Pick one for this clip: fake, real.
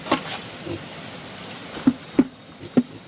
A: real